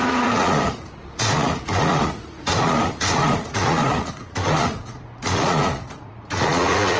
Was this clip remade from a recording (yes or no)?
yes